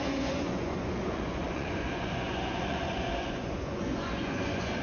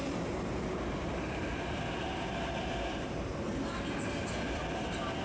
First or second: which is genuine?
second